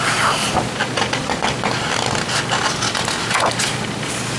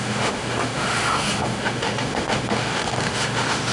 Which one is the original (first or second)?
first